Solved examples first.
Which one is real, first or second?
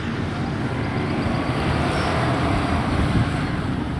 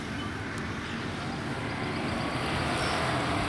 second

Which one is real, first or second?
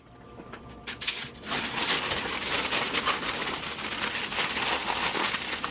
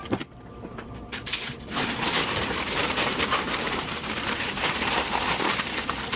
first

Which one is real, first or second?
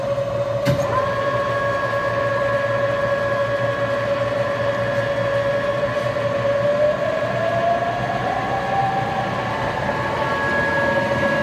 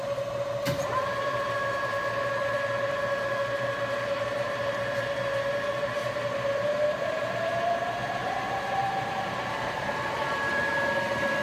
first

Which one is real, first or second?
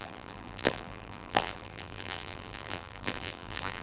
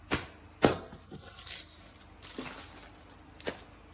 second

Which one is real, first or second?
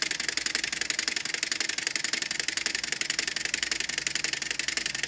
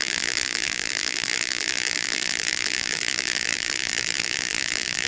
first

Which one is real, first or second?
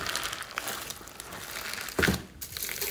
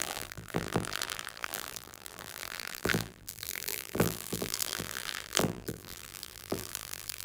first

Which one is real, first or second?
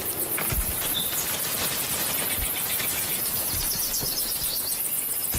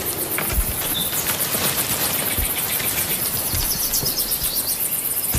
first